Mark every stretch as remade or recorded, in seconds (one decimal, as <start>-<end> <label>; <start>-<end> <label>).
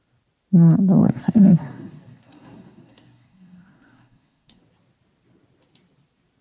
0.0-1.0 recorded; 1.0-4.6 remade; 4.6-6.4 recorded